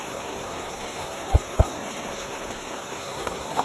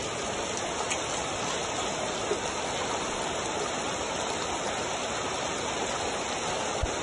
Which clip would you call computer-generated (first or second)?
first